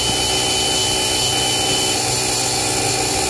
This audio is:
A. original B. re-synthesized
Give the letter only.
A